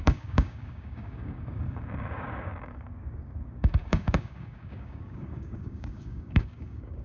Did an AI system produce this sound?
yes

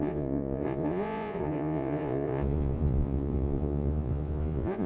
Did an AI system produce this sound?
yes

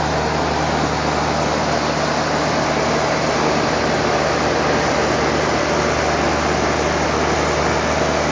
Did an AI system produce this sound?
no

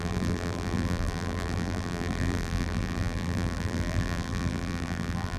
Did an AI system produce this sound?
yes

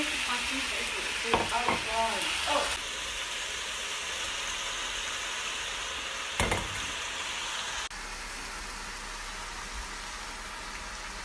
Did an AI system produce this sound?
no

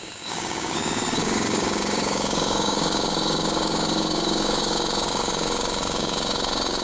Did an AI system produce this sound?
yes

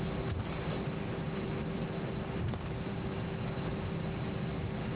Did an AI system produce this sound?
no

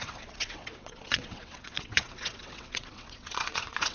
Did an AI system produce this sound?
yes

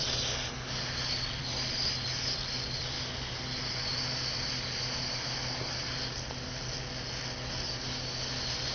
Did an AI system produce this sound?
no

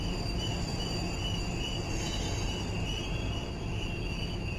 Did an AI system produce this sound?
no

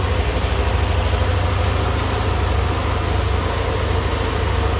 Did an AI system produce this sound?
no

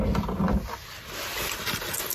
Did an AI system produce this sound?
no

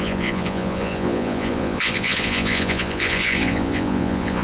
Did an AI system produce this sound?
yes